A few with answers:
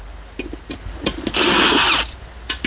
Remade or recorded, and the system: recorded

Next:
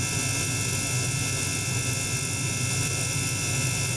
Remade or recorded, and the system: recorded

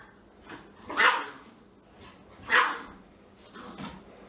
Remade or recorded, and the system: recorded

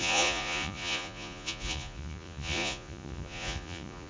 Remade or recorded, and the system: remade, vocoder, Vocos